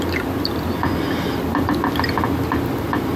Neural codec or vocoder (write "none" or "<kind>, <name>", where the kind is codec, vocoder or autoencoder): none